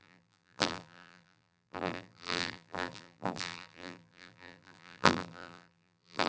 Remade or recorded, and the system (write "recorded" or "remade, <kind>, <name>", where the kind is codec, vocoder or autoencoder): remade, vocoder, BigVGAN v2